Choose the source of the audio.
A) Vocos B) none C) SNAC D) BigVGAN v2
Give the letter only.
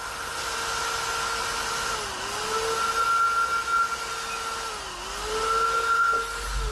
B